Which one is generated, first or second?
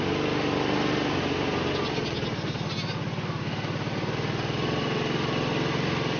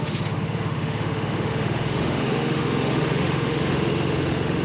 second